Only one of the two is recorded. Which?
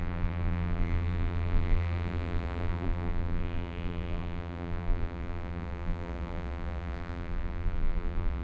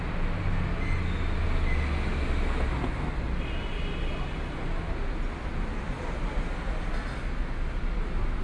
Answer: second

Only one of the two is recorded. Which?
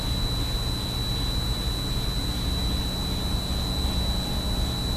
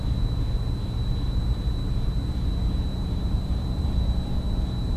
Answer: first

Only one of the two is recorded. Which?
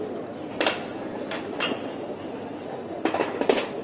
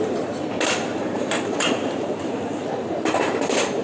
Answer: first